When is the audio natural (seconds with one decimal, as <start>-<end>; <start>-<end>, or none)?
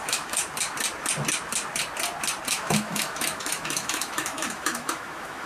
0.4-2.5